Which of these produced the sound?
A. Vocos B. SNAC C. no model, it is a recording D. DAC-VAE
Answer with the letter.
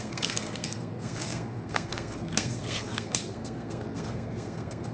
B